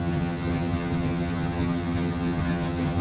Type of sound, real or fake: fake